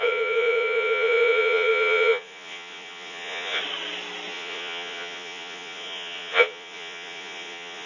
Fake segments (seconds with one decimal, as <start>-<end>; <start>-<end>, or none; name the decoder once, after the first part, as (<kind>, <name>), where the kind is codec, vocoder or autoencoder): 0.0-3.6 (vocoder, Vocos); 4.3-7.9